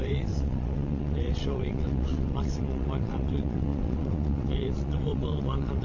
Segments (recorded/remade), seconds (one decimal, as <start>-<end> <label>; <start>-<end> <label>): 0.0-5.8 remade